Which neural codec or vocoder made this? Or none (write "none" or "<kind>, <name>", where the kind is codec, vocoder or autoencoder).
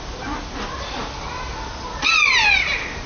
none